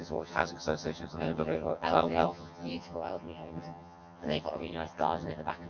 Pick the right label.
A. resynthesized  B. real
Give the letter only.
A